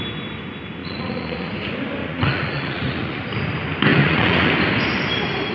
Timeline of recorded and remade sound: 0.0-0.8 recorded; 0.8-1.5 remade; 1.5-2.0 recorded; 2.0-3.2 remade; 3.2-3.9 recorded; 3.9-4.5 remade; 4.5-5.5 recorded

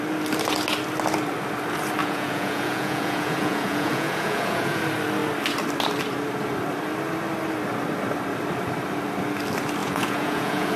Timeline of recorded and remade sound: 0.0-2.0 recorded; 2.0-4.8 remade; 4.8-9.8 recorded; 9.8-10.8 remade

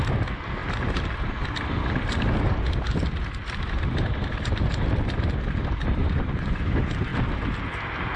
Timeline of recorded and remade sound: 0.0-6.0 recorded; 6.0-6.6 remade; 6.6-8.2 recorded

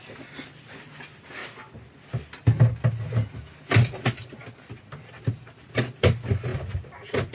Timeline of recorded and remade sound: 0.0-7.3 recorded

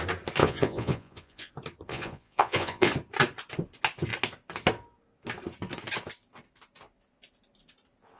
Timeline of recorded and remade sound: 0.0-0.4 recorded; 0.4-1.5 remade; 1.5-1.9 recorded; 1.9-2.9 remade; 2.9-8.2 recorded